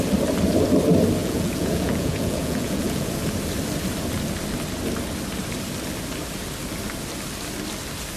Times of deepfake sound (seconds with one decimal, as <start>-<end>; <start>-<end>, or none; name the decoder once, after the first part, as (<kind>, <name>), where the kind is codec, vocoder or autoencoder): 1.2-3.1 (vocoder, Vocos)